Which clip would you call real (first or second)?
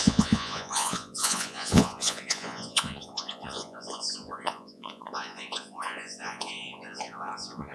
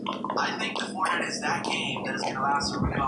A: second